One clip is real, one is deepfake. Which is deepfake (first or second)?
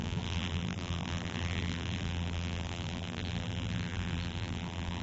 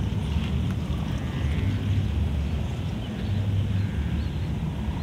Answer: first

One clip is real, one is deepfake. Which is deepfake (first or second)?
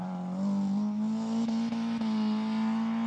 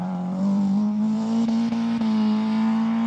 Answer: second